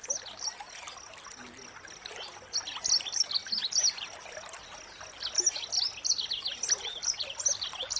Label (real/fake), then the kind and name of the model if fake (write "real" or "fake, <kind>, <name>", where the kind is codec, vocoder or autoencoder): real